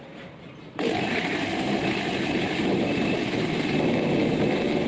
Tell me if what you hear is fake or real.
fake